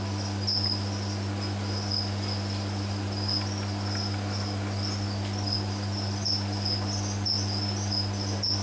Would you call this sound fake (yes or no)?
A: no